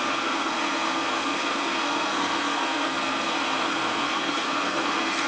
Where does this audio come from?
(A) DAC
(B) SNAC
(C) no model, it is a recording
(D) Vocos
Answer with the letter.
B